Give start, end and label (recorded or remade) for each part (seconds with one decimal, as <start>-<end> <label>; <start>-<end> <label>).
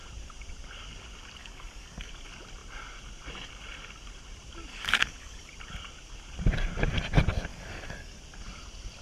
0.0-1.4 recorded; 1.4-2.1 remade; 2.1-4.7 recorded; 4.7-5.5 remade; 5.5-7.5 recorded; 7.5-8.2 remade; 8.2-9.0 recorded